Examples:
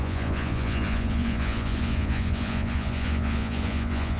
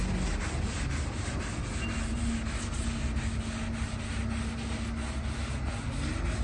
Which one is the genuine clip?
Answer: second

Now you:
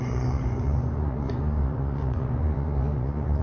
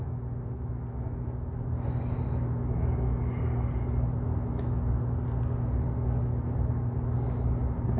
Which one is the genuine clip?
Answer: second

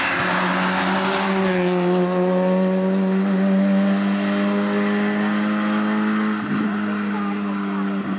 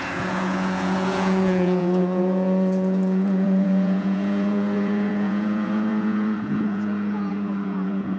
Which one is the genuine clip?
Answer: first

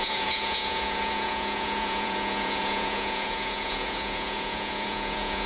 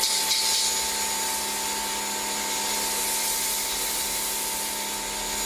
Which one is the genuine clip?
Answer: second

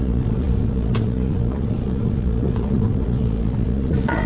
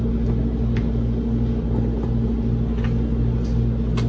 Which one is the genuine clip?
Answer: second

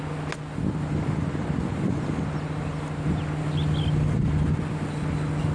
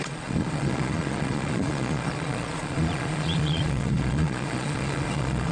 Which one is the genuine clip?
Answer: first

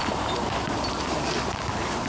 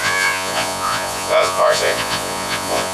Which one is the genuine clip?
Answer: first